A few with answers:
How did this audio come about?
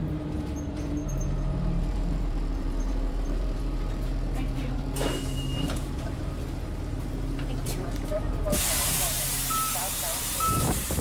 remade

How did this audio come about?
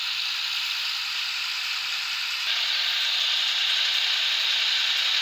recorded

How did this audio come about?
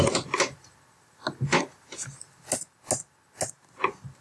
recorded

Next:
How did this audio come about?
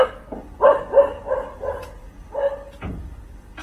recorded